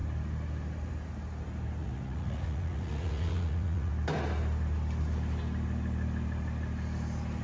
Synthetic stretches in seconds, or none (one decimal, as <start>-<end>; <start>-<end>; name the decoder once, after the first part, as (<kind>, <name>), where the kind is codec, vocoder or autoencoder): 1.8-3.9 (vocoder, Vocos)

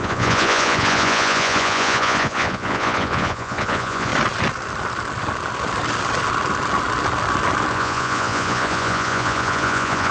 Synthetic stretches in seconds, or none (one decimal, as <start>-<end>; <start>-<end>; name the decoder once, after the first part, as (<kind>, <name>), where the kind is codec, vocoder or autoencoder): 0.0-4.1 (vocoder, Vocos); 7.7-10.1

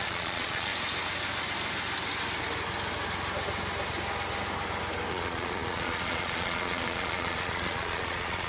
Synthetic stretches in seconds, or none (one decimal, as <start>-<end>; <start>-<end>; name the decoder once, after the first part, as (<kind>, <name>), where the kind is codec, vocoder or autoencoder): 0.0-0.7 (vocoder, Vocos); 5.1-8.5

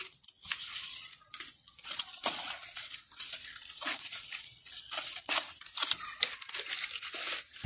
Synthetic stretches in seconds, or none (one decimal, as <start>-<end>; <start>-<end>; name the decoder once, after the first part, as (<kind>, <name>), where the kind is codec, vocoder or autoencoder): 0.7-5.3 (vocoder, Vocos)

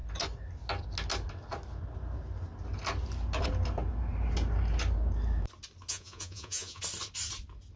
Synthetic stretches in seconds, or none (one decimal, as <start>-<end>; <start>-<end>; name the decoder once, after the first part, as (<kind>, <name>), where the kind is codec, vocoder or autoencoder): 5.9-6.8 (vocoder, Vocos)

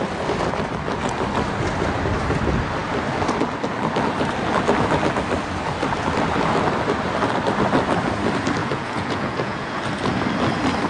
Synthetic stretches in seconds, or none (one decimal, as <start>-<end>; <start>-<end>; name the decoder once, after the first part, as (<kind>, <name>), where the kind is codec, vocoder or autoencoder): 8.6-9.8 (vocoder, Vocos)

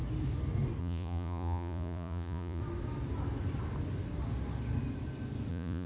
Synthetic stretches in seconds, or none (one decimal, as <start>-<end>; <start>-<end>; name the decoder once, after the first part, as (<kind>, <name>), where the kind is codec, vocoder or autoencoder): 0.8-2.6 (vocoder, Vocos); 5.5-5.9